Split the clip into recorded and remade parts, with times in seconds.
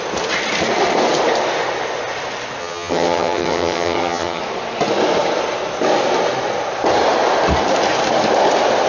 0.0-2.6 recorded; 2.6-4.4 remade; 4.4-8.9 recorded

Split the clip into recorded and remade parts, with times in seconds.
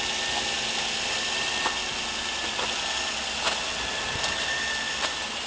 0.0-5.5 recorded